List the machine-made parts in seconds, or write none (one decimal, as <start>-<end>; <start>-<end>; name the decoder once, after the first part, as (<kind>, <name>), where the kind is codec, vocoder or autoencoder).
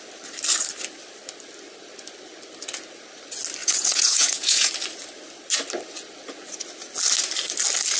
3.6-4.7 (vocoder, Vocos)